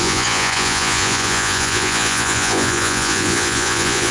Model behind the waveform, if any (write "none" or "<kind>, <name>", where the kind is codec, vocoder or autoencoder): vocoder, Vocos